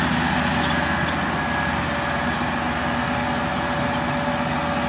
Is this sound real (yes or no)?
yes